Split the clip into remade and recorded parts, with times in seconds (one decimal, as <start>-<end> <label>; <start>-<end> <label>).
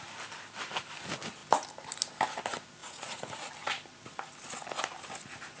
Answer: 0.0-2.8 recorded; 2.8-3.5 remade; 3.5-5.6 recorded